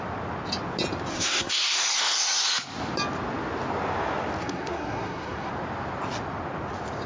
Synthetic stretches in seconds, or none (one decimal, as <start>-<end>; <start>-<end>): 1.1-1.8; 4.4-5.5

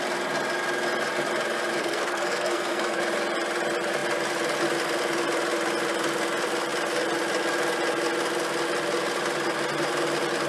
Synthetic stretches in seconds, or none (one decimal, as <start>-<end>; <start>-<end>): 1.8-3.0

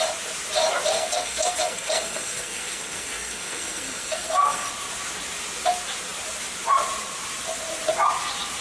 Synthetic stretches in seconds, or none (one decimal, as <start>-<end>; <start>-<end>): 0.9-4.7

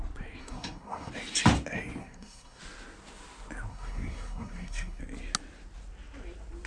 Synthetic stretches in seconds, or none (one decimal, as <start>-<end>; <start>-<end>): 0.4-1.1; 2.0-2.6; 3.7-5.0